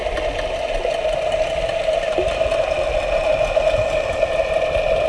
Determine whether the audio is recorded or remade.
recorded